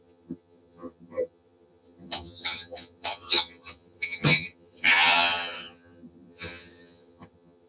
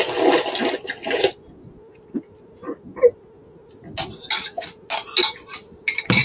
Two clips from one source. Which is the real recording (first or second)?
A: second